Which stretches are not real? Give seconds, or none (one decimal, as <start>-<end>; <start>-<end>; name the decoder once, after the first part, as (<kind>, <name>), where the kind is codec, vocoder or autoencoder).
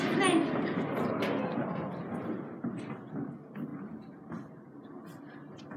none